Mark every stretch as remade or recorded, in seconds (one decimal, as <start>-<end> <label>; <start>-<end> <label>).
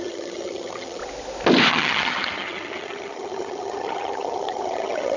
0.0-1.0 remade; 1.0-1.7 recorded; 1.7-5.2 remade